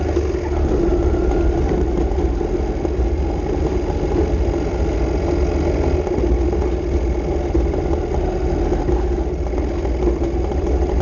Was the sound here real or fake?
real